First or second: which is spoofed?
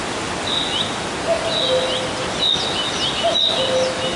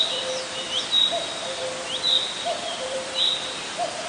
second